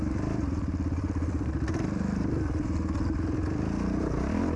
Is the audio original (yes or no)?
no